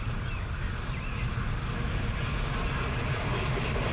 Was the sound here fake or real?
real